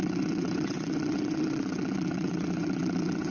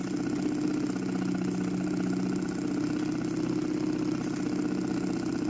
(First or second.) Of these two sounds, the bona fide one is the second